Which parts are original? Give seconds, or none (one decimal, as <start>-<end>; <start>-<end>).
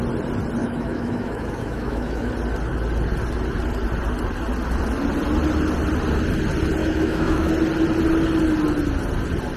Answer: 0.0-0.6; 2.3-6.8; 7.5-9.6